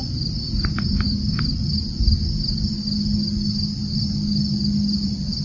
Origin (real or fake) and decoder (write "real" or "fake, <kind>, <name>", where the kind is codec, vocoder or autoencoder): real